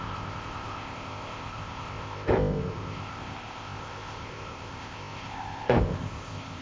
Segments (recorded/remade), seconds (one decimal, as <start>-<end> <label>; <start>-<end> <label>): 0.0-6.6 remade